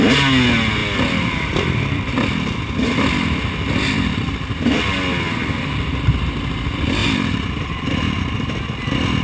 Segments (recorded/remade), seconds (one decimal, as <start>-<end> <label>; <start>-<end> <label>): 0.0-0.8 recorded; 0.8-6.0 remade; 6.0-7.0 recorded; 7.0-8.0 remade; 8.0-9.2 recorded